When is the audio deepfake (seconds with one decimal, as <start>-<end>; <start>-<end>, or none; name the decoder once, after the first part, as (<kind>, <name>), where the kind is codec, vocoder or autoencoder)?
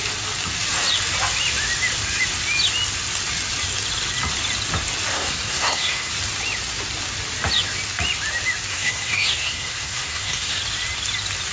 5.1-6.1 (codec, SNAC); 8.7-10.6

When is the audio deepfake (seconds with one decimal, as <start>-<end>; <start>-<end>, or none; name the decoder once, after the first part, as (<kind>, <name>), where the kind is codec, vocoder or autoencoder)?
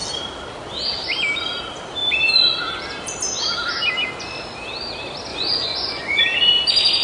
5.3-6.2 (vocoder, Vocos)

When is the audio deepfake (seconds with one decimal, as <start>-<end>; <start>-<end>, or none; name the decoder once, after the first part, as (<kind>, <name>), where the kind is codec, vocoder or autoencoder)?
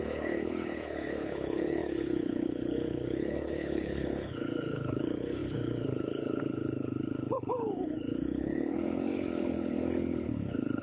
0.0-10.8 (codec, HILCodec)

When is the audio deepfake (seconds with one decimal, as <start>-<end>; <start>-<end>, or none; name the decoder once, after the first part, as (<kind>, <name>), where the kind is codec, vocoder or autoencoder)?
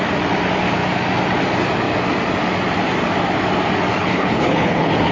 3.9-5.1 (codec, HILCodec)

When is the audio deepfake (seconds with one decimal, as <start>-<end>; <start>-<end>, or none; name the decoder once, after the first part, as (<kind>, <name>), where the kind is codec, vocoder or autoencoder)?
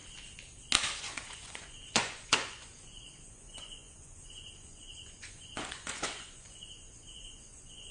1.0-7.9 (vocoder, Vocos)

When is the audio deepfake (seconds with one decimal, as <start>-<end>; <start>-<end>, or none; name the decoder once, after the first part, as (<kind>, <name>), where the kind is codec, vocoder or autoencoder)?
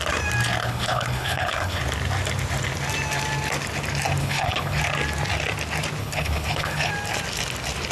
0.6-1.8 (codec, HILCodec); 4.2-4.8; 6.0-6.9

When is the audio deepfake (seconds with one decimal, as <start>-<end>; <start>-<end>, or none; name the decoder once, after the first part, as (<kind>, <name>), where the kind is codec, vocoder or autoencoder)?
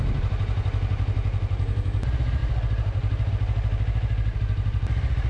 none